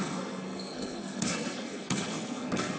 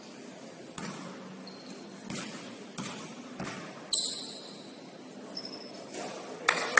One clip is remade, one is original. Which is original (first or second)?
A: second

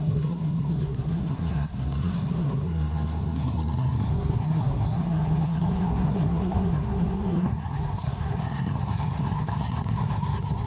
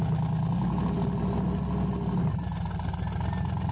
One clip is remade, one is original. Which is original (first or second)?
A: second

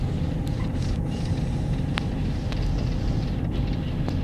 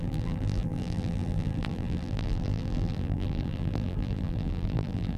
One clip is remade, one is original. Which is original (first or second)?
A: first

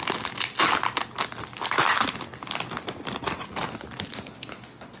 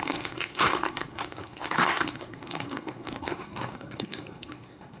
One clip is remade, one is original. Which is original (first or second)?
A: first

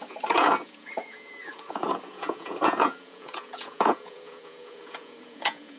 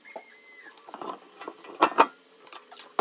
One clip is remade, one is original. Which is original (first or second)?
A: second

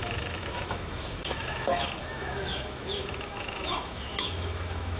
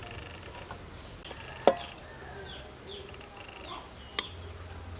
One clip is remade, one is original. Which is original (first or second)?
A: second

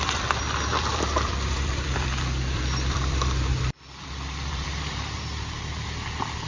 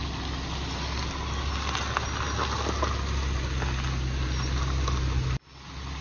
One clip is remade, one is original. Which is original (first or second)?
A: second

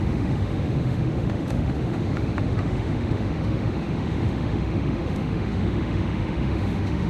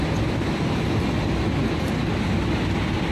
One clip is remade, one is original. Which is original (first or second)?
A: second